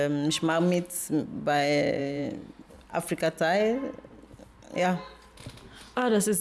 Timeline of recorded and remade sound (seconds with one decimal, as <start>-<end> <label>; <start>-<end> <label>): 0.0-2.0 recorded; 2.0-2.7 remade; 2.7-6.4 recorded